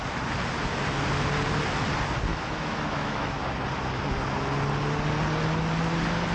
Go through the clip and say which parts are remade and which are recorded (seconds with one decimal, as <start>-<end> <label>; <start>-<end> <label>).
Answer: 0.0-2.3 recorded; 2.3-3.4 remade; 3.4-6.3 recorded